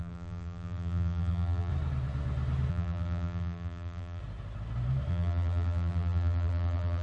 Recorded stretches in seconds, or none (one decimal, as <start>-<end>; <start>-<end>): 1.7-2.7; 4.2-5.1